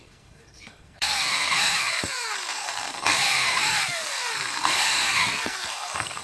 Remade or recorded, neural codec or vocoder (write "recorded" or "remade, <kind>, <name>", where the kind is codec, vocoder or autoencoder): remade, codec, SNAC